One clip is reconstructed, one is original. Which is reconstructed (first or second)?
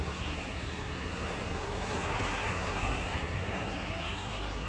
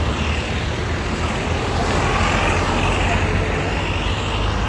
first